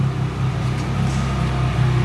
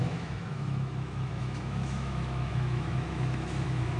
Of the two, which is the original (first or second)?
first